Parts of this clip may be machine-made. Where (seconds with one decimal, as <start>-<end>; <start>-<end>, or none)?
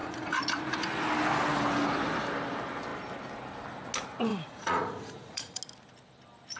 0.0-0.6; 4.3-5.6